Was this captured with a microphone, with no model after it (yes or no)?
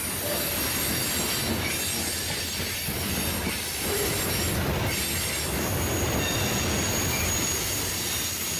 yes